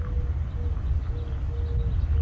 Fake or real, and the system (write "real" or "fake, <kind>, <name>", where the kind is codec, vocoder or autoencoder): real